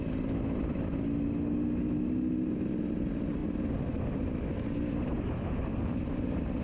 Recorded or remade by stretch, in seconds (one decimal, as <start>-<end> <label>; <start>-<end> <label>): 0.0-6.6 recorded